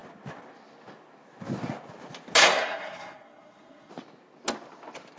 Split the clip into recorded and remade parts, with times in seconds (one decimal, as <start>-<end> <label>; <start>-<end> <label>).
0.0-2.4 recorded; 2.4-3.9 remade; 3.9-5.2 recorded

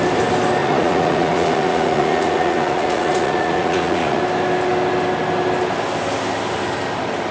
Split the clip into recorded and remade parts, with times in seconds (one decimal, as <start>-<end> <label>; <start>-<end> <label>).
0.0-0.6 recorded; 0.6-4.2 remade; 4.2-7.3 recorded

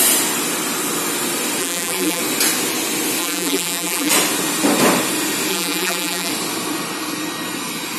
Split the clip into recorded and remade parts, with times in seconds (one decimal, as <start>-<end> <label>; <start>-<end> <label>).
0.0-1.6 recorded; 1.6-2.2 remade; 2.2-3.2 recorded; 3.2-4.1 remade; 4.1-5.5 recorded; 5.5-6.3 remade; 6.3-8.0 recorded

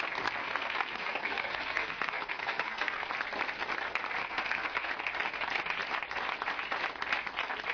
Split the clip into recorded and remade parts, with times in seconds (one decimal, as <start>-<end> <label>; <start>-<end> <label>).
0.0-0.4 recorded; 0.4-3.1 remade; 3.1-4.2 recorded; 4.2-4.9 remade; 4.9-7.7 recorded

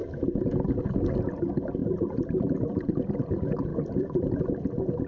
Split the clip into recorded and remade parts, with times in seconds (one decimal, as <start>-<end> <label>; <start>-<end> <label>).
0.0-1.8 recorded; 1.8-3.1 remade; 3.1-3.7 recorded; 3.7-4.4 remade; 4.4-5.1 recorded

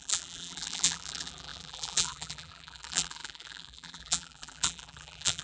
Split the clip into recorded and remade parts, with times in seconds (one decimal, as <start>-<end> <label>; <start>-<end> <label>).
0.0-5.4 remade

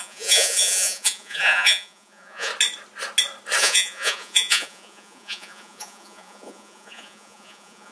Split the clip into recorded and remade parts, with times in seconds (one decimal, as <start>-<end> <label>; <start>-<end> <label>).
0.0-2.5 remade; 2.5-3.6 recorded; 3.6-7.9 remade

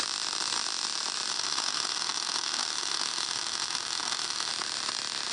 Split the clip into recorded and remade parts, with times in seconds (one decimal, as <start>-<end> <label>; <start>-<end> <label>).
0.0-1.3 recorded; 1.3-4.5 remade; 4.5-5.3 recorded